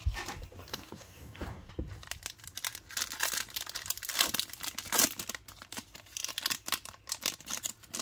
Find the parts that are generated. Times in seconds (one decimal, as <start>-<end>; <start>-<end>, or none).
0.7-1.7